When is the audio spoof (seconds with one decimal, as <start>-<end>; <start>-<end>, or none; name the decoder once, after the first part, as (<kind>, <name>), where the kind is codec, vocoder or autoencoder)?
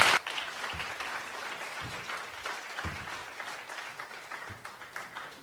0.0-1.4 (vocoder, BigVGAN v2); 2.6-3.2; 3.7-5.4